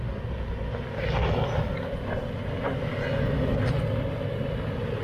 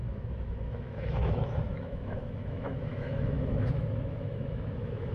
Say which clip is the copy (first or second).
second